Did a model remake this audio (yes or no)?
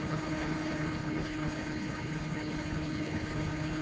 yes